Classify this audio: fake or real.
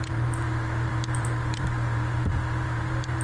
fake